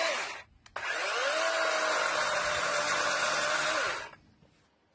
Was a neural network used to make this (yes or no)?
no